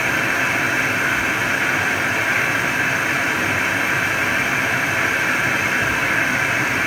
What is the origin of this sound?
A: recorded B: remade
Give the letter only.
A